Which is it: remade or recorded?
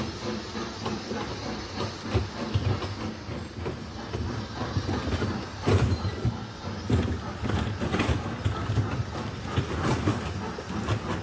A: recorded